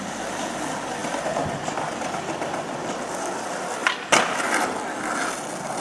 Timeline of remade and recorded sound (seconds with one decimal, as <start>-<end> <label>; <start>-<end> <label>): 0.0-5.8 recorded